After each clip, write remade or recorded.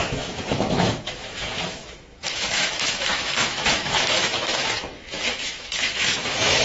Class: remade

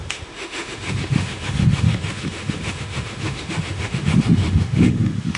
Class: remade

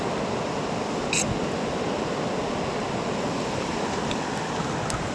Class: recorded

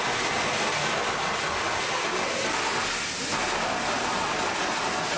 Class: recorded